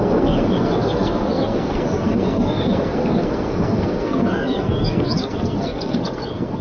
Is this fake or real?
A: fake